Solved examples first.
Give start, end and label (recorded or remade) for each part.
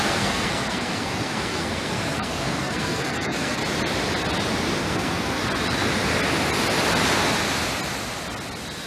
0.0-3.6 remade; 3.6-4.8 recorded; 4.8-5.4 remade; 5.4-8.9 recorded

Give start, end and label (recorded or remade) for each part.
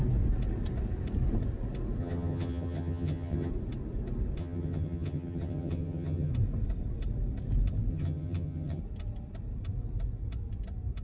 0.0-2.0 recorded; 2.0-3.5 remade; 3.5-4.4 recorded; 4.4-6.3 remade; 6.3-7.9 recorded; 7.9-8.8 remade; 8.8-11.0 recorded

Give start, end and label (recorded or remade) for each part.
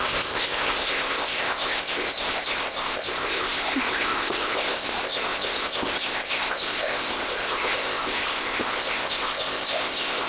0.0-10.3 remade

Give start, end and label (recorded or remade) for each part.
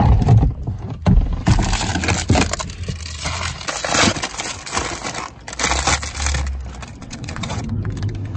0.0-7.0 recorded; 7.0-7.6 remade; 7.6-8.4 recorded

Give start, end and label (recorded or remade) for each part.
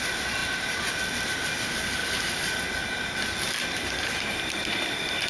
0.0-5.3 recorded